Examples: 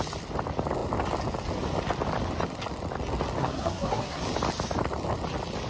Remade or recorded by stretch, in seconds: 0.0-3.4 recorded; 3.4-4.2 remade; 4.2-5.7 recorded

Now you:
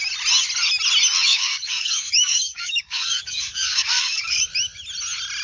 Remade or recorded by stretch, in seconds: 0.0-1.3 recorded; 1.3-4.4 remade; 4.4-5.4 recorded

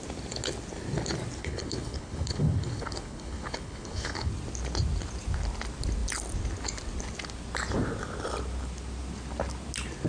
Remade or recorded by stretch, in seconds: 0.0-1.4 recorded; 1.4-4.3 remade; 4.3-10.1 recorded

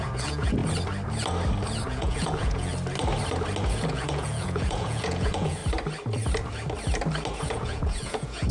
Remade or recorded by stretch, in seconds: 0.0-0.6 remade; 0.6-1.9 recorded; 1.9-2.7 remade; 2.7-3.9 recorded; 3.9-5.6 remade; 5.6-7.4 recorded; 7.4-8.5 remade

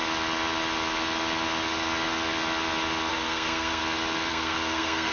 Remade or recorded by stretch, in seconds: 0.0-3.1 recorded; 3.1-3.8 remade; 3.8-4.3 recorded; 4.3-5.1 remade